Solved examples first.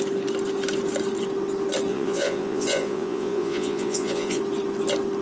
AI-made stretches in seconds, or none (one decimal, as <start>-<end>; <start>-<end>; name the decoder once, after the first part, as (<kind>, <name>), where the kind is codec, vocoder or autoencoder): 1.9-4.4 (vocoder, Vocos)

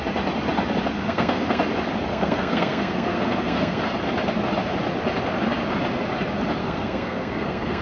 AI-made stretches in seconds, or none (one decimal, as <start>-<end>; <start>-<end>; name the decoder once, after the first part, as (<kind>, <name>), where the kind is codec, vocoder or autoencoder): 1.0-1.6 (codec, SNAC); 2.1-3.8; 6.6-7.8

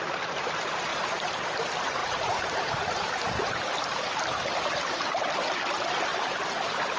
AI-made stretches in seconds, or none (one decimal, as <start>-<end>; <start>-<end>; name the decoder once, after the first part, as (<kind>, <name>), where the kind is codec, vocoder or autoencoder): 0.9-1.5 (vocoder, BigVGAN v2); 2.0-3.6; 6.1-7.0

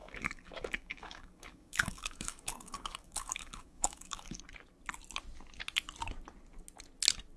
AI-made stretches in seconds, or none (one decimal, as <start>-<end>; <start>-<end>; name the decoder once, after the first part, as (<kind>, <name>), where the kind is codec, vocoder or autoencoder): 0.0-4.4 (codec, DAC)